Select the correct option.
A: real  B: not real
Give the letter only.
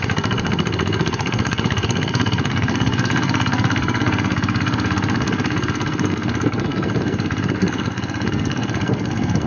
B